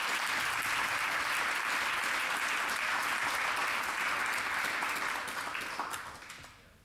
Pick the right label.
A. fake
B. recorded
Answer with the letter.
B